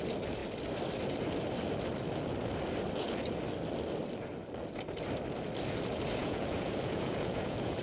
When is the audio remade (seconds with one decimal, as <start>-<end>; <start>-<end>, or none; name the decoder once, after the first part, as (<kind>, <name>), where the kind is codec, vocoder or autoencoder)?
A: 6.2-7.8 (vocoder, Vocos)